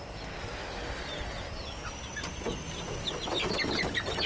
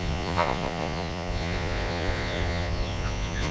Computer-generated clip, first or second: second